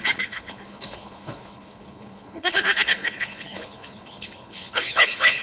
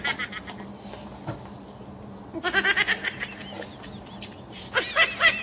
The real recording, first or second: second